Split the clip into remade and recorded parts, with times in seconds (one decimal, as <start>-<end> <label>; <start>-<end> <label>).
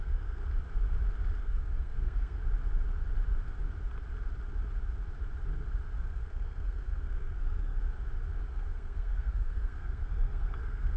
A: 0.0-0.4 remade; 0.4-1.4 recorded; 1.4-2.4 remade; 2.4-6.0 recorded; 6.0-7.8 remade; 7.8-8.4 recorded; 8.4-11.0 remade